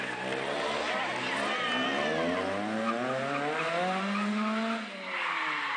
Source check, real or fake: real